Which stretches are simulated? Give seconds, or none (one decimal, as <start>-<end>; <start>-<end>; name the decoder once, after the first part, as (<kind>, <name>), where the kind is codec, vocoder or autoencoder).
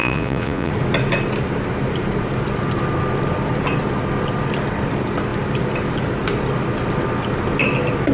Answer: 0.0-0.7 (vocoder, Vocos)